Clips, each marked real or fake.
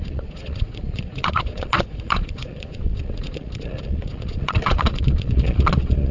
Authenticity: fake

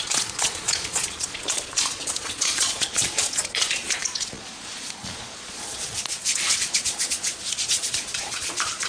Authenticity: fake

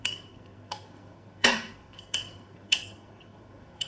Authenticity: fake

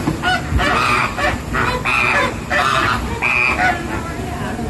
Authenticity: real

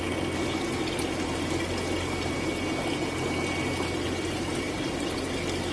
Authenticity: real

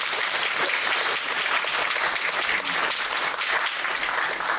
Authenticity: real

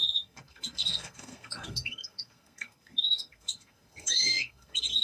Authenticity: fake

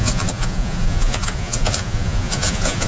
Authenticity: fake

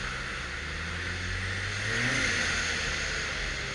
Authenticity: real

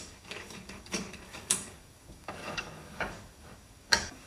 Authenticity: fake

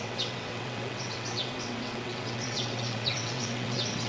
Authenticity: fake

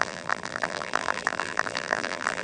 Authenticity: fake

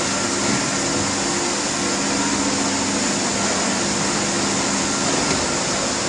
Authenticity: real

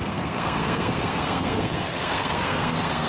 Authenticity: fake